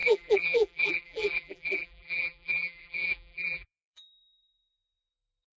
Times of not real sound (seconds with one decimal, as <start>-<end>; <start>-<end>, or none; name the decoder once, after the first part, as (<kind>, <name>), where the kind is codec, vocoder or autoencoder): 0.0-5.6 (vocoder, BigVGAN v2)